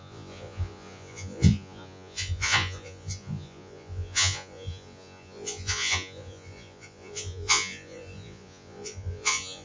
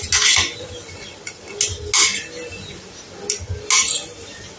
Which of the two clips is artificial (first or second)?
first